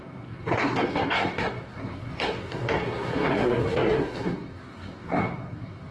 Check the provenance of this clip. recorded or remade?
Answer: remade